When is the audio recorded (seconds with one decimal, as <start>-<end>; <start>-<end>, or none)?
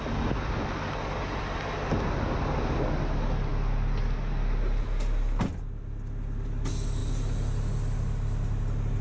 0.0-9.0